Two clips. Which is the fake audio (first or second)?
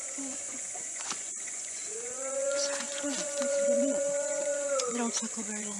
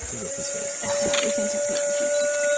first